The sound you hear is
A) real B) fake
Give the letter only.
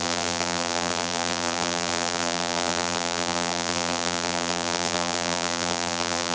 B